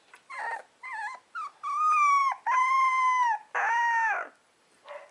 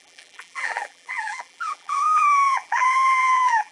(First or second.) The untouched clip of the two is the first